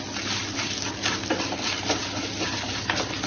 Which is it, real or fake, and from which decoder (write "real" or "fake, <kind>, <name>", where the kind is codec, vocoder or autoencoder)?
real